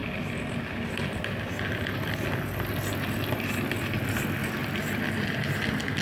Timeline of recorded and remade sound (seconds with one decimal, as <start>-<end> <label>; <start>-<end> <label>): 0.0-6.0 recorded